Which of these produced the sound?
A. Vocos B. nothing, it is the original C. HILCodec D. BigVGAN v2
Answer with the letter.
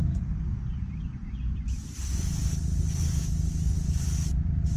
B